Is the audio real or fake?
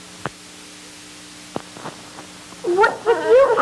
real